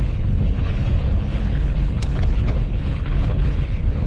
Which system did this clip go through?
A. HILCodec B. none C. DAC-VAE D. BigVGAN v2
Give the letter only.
A